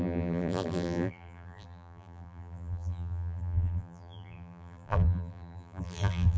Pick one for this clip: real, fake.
fake